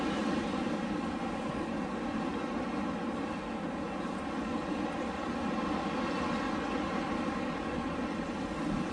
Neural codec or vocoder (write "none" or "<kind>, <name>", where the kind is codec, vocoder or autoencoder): none